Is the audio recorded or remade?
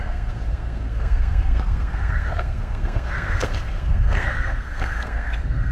remade